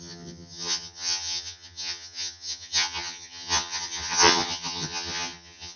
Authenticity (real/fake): fake